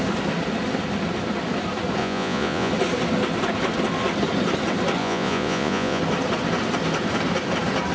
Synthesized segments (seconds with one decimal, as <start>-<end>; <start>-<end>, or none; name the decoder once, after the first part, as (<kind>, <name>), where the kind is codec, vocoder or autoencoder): 2.0-2.7 (vocoder, Vocos); 5.0-6.0